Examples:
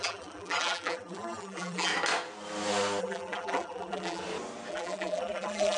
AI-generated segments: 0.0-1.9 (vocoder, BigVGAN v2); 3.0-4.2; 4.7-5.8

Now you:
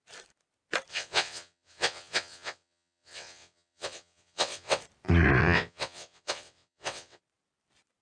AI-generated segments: 0.9-4.8 (vocoder, WaveNeXt); 5.4-7.2

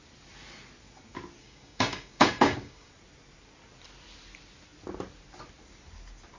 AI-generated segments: 1.4-2.9 (codec, DAC)

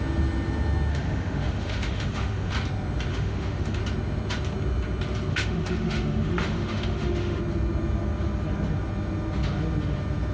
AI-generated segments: 0.9-2.5 (autoencoder, DAC-VAE); 3.1-3.8; 5.3-7.4

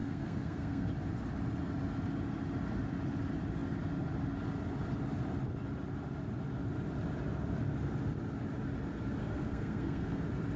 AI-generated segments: 0.0-0.9 (codec, SNAC); 9.2-10.2

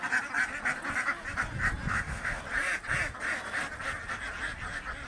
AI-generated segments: 1.9-2.4 (autoencoder, DAC-VAE)